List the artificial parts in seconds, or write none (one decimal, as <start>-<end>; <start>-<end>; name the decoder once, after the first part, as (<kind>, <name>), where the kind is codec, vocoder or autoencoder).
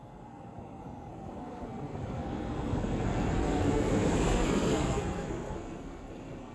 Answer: 0.0-6.5 (codec, SNAC)